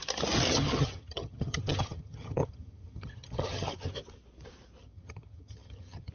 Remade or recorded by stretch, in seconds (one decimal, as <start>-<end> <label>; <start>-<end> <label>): 0.0-0.5 recorded; 0.5-3.9 remade; 3.9-4.8 recorded; 4.8-6.1 remade